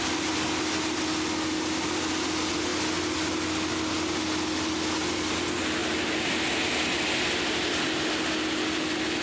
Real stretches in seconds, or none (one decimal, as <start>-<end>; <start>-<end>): 0.0-9.2